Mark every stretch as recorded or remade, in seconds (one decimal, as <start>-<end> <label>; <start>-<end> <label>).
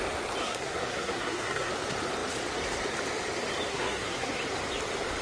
0.0-0.4 recorded; 0.4-1.7 remade; 1.7-3.7 recorded; 3.7-4.4 remade; 4.4-5.2 recorded